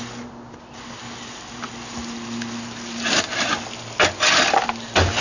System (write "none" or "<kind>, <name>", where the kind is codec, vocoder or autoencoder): none